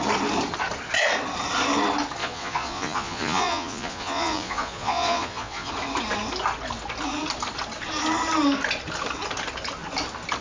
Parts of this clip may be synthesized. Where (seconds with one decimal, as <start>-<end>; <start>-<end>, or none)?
2.2-5.7